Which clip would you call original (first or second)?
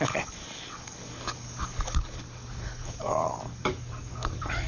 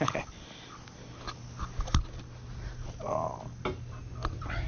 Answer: second